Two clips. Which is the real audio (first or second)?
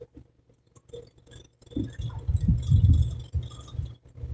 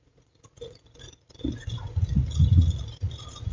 first